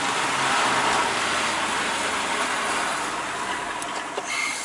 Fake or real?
real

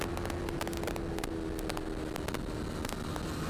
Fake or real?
real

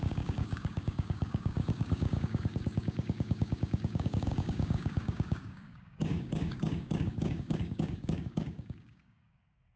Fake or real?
fake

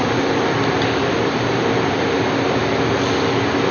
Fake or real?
fake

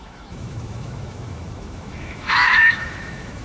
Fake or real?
fake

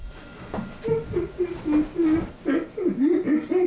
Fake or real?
real